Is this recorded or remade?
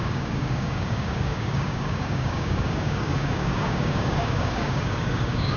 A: remade